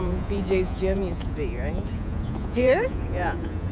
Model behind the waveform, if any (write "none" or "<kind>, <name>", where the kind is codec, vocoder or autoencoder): vocoder, Vocos